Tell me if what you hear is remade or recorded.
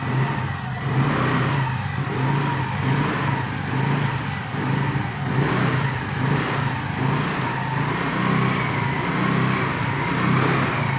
recorded